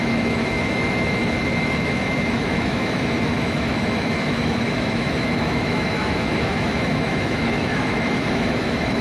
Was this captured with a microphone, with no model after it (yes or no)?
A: no